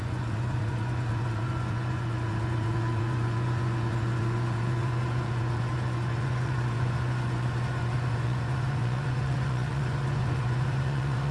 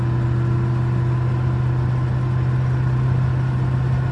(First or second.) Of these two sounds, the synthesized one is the first